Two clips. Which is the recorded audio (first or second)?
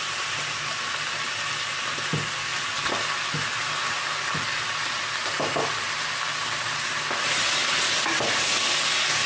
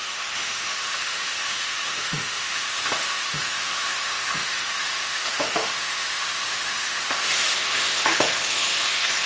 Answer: first